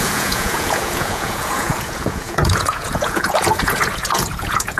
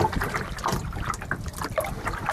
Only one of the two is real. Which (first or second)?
second